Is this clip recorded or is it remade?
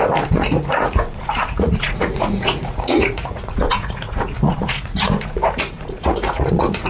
remade